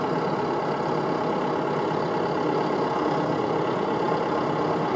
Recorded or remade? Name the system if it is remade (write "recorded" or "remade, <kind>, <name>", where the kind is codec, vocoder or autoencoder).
recorded